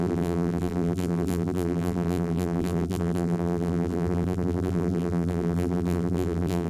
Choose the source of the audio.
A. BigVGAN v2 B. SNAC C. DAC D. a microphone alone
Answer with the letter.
A